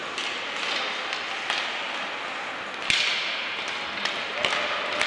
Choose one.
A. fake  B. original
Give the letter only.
B